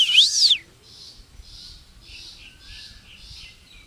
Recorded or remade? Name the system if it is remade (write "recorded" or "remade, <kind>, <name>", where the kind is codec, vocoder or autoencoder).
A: recorded